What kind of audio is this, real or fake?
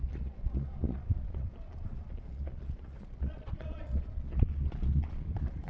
fake